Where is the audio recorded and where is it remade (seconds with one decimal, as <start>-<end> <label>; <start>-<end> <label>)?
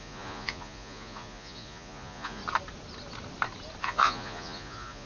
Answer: 0.0-2.4 remade; 2.4-3.8 recorded; 3.8-5.1 remade